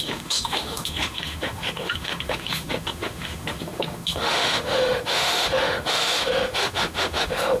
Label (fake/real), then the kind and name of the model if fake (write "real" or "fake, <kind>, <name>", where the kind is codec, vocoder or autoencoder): fake, autoencoder, DAC-VAE